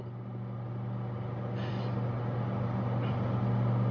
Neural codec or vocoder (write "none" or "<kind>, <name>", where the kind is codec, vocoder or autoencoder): none